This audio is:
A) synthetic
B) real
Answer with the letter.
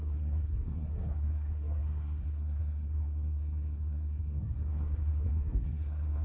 A